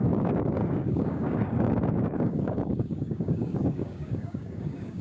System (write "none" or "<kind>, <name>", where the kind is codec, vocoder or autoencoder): codec, DAC